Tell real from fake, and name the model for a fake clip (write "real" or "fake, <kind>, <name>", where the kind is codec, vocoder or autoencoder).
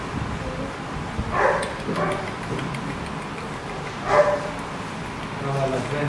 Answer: real